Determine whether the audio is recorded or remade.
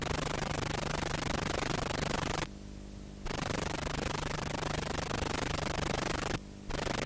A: recorded